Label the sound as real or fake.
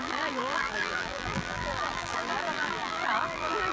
fake